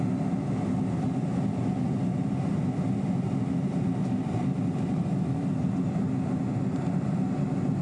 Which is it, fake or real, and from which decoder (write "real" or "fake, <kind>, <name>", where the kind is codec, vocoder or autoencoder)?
real